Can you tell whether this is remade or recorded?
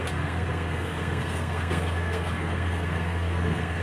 remade